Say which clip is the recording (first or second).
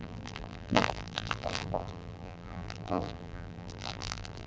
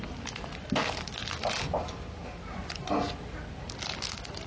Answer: second